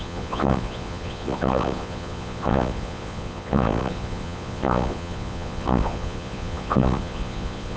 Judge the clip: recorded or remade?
remade